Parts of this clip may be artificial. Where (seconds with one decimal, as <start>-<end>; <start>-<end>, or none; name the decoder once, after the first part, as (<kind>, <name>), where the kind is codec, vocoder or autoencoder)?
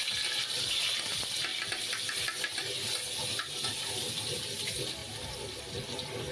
none